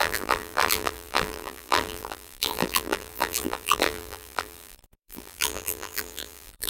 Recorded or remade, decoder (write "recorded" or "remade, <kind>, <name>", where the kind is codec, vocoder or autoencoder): remade, vocoder, BigVGAN v2